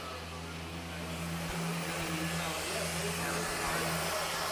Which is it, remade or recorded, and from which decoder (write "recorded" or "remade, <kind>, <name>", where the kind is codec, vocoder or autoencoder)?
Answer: recorded